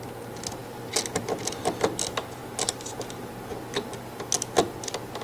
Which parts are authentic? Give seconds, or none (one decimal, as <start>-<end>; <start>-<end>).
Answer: 0.0-5.2